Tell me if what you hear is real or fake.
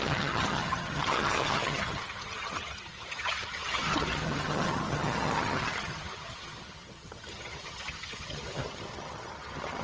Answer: fake